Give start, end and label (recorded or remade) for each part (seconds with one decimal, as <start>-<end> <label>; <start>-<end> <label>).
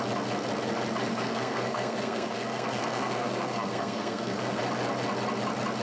0.0-1.1 recorded; 1.1-4.6 remade; 4.6-5.8 recorded